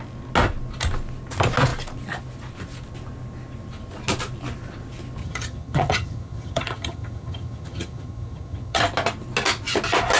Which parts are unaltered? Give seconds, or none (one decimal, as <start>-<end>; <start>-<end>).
0.0-5.2; 8.8-10.2